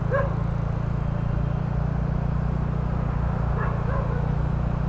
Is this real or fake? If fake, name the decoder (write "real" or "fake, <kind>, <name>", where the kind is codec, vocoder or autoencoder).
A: real